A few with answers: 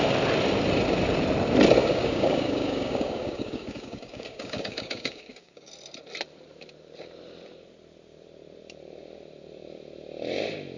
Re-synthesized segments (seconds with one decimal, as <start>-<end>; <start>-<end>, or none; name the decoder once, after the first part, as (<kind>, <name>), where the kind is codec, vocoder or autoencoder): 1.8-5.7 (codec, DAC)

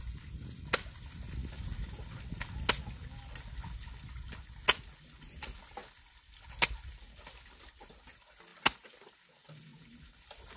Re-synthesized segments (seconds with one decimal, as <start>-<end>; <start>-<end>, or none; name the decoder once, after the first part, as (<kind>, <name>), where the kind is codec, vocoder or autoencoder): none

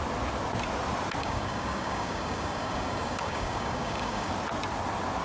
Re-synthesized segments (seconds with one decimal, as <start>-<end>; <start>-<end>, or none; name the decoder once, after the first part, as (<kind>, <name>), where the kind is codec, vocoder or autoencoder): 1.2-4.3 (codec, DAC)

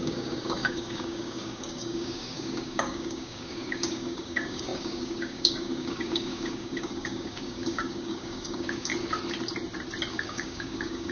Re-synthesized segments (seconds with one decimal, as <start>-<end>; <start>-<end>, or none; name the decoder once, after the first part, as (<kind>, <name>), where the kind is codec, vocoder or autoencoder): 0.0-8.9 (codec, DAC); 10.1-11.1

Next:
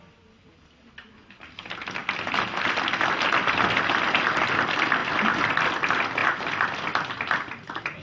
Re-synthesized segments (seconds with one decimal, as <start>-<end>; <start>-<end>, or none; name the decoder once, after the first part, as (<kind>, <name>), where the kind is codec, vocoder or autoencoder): none